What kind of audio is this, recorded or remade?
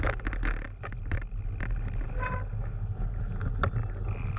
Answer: recorded